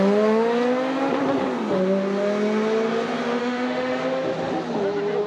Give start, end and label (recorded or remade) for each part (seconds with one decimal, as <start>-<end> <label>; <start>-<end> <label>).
0.0-3.4 recorded; 3.4-4.0 remade; 4.0-5.3 recorded